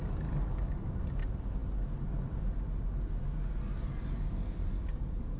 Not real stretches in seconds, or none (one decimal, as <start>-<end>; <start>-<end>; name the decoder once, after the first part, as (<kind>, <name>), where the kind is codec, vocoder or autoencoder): none